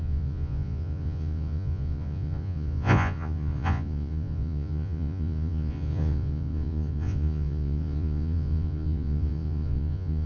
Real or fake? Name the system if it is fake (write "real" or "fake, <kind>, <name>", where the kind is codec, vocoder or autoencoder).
fake, vocoder, Vocos